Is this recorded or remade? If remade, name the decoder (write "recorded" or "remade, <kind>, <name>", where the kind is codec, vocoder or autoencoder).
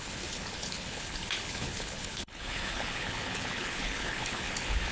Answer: remade, codec, HILCodec